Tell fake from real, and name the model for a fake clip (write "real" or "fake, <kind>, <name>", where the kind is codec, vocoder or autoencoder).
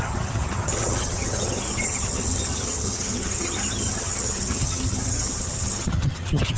fake, vocoder, HiFi-GAN